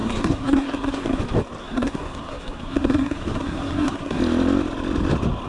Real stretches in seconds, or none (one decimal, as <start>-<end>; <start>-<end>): 1.2-1.6; 4.2-5.5